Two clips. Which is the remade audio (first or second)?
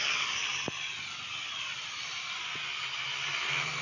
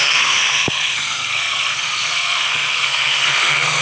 second